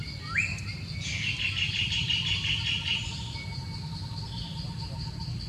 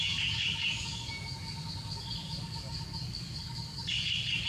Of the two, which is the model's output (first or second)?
second